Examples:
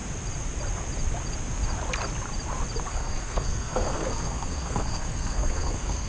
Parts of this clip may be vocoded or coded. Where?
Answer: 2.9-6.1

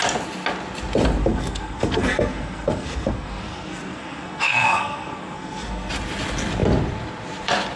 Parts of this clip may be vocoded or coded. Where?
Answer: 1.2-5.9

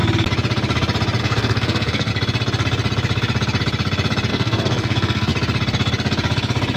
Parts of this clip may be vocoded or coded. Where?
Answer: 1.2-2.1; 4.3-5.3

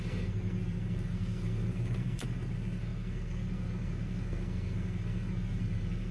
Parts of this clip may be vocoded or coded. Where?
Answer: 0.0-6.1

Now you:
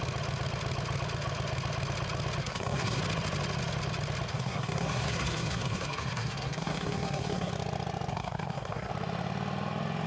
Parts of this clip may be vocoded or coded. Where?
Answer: 2.4-3.0; 4.3-7.5; 8.1-8.9

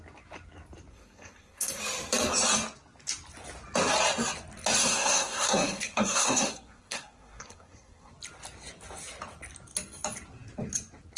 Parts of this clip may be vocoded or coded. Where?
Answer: 0.9-1.8; 4.8-8.1

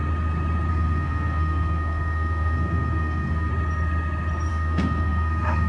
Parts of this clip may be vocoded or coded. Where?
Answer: 0.7-3.5; 4.5-5.7